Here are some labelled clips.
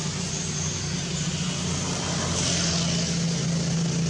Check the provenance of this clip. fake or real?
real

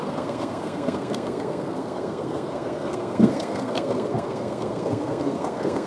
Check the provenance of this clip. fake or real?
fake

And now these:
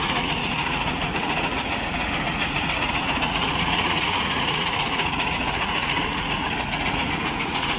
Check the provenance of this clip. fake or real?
fake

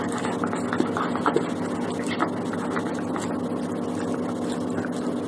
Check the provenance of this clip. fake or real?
real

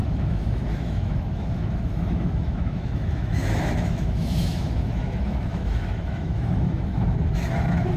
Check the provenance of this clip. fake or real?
fake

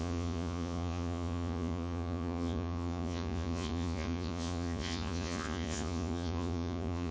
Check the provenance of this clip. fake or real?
fake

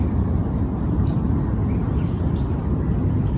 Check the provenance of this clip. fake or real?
real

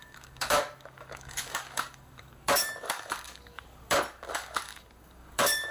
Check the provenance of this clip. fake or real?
fake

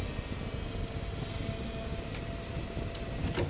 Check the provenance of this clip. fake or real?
real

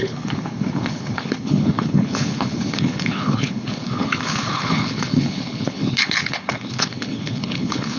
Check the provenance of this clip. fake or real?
fake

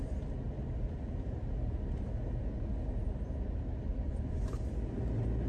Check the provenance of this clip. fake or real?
real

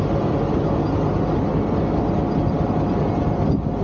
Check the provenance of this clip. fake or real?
real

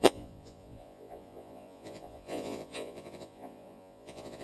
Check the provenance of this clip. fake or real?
fake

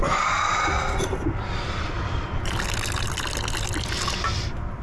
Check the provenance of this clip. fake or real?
real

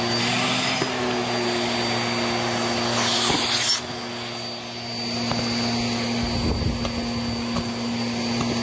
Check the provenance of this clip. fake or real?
real